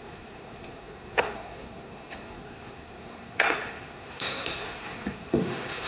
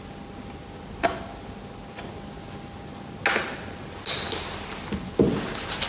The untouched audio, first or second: second